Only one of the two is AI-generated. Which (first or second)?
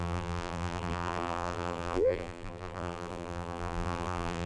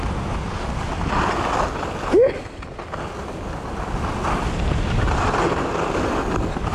first